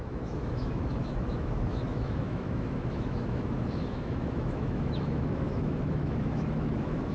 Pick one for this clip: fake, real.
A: fake